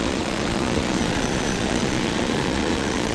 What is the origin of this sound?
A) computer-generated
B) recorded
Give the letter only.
A